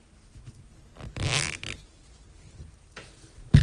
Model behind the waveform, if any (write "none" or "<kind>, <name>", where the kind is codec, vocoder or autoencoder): none